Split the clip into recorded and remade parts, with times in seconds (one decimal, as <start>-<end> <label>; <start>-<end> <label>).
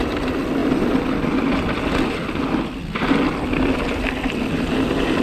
0.0-0.6 recorded; 0.6-1.5 remade; 1.5-5.2 recorded